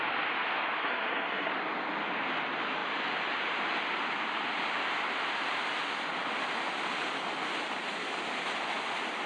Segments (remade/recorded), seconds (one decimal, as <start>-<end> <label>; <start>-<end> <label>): 0.0-0.8 recorded; 0.8-1.5 remade; 1.5-9.3 recorded